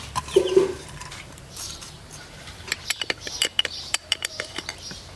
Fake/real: fake